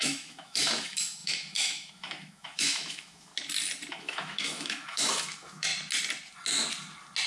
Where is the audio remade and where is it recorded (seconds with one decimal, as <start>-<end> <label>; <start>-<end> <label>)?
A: 0.0-3.3 remade; 3.3-3.9 recorded; 3.9-5.7 remade; 5.7-7.3 recorded